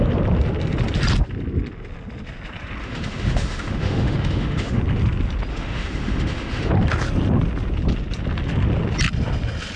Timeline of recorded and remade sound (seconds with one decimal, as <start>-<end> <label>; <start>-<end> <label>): 0.0-2.8 recorded; 2.8-4.8 remade; 4.8-5.5 recorded; 5.5-6.7 remade; 6.7-9.8 recorded